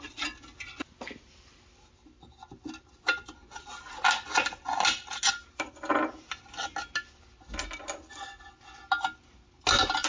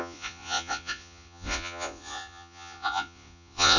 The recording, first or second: first